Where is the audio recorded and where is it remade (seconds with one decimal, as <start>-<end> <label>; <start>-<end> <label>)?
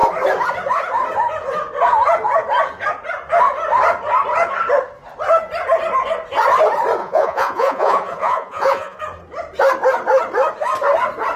0.0-7.0 recorded; 7.0-9.0 remade; 9.0-11.4 recorded